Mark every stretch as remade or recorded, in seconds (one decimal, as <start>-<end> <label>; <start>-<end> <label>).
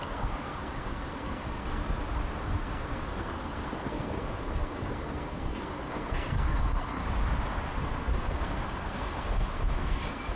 0.0-1.8 remade; 1.8-2.5 recorded; 2.5-7.0 remade; 7.0-7.8 recorded; 7.8-10.4 remade